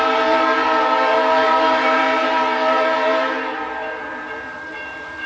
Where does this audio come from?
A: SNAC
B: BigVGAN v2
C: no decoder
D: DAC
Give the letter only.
B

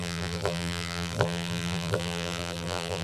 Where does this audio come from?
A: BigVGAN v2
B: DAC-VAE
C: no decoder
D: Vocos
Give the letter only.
A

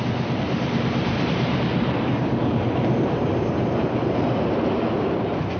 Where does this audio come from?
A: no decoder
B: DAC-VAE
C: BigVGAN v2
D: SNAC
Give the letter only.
C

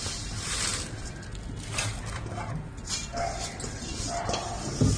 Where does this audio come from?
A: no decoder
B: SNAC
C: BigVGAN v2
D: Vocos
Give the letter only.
A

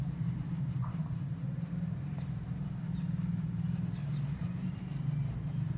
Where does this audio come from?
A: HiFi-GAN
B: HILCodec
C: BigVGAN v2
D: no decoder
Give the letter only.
C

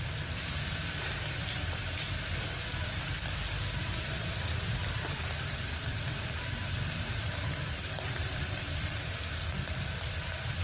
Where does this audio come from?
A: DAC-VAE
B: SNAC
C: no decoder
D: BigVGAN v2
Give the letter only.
D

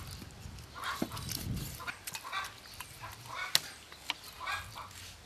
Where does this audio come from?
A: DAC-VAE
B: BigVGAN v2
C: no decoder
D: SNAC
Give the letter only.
C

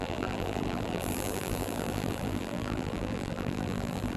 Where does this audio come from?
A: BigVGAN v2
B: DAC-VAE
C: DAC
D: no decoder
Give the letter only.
A